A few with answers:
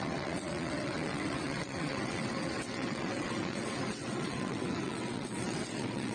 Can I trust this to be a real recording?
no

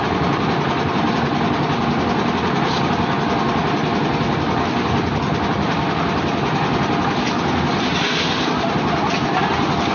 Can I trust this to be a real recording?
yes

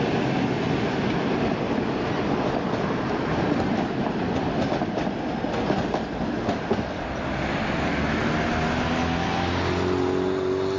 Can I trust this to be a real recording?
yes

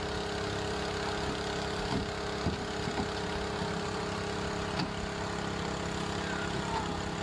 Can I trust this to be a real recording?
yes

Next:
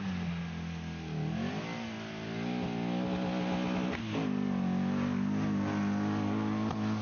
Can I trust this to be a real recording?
yes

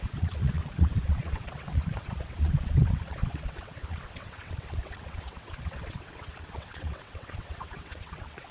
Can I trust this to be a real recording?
no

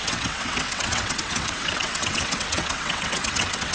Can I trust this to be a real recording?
no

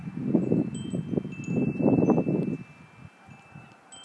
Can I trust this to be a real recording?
yes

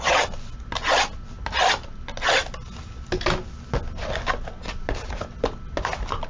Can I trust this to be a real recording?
yes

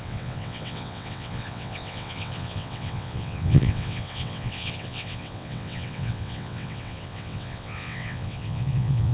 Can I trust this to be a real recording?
no